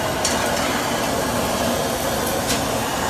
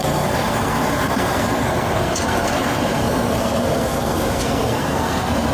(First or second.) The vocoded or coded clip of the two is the second